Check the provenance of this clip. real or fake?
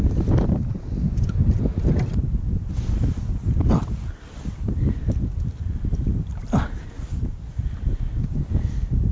real